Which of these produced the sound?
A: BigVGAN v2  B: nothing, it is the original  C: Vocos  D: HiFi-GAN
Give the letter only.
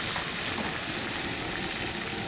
B